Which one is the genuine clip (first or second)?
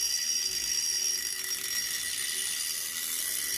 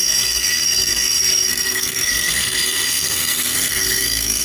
first